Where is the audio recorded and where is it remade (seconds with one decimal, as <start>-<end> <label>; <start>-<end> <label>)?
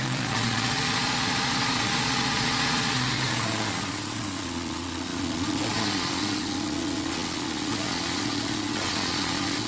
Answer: 0.0-9.7 remade